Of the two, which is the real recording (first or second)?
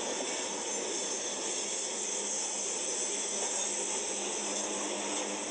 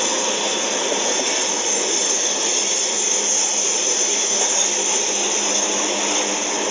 first